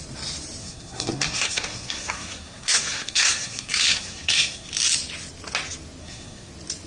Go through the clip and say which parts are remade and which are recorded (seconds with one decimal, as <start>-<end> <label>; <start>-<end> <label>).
0.0-0.6 recorded; 0.6-4.7 remade; 4.7-6.0 recorded; 6.0-6.5 remade; 6.5-6.9 recorded